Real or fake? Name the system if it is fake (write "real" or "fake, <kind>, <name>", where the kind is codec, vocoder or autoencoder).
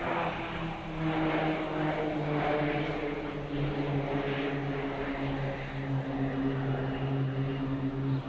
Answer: real